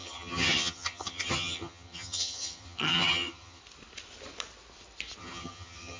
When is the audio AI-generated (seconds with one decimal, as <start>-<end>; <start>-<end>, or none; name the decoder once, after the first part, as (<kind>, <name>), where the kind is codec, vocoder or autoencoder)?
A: 0.0-3.6 (vocoder, HiFi-GAN); 5.2-6.0